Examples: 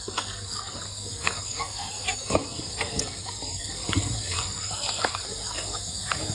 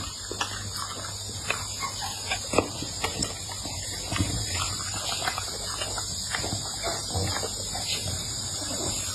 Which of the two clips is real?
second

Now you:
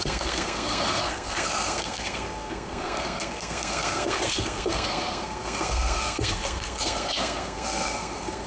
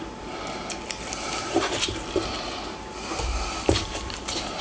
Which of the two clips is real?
second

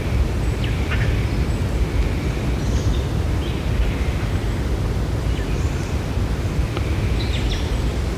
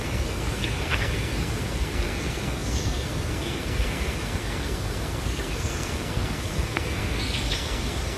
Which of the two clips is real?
first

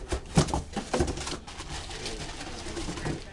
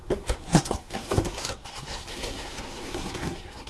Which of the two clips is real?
first